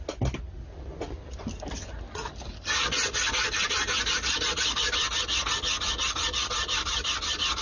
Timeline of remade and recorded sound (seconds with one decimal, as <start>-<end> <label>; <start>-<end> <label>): 0.0-7.6 recorded